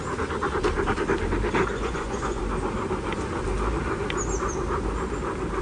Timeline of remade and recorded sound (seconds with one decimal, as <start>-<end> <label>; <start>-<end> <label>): 0.0-1.7 recorded; 1.7-2.4 remade; 2.4-5.6 recorded